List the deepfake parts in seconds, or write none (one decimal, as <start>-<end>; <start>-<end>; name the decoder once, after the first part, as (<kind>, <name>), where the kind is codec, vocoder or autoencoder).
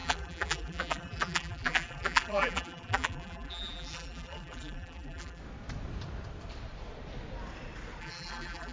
0.0-5.4 (vocoder, BigVGAN v2); 8.0-8.7